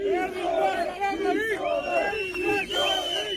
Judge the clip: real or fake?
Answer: real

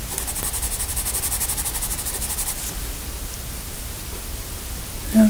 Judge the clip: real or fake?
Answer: real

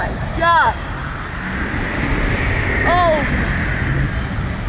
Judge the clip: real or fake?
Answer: real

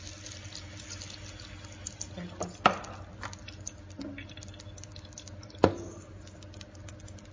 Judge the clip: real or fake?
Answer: real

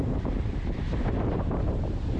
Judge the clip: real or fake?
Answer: fake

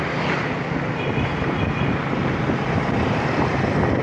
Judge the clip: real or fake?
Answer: real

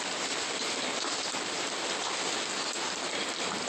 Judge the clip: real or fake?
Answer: real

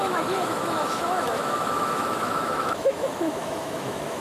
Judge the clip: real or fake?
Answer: fake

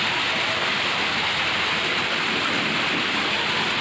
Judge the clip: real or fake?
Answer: real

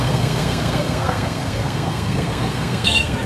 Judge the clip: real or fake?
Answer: fake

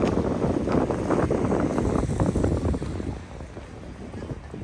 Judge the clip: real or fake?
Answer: real